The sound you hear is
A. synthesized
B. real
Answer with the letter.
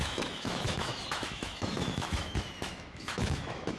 A